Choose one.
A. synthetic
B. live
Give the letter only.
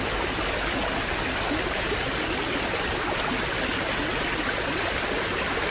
B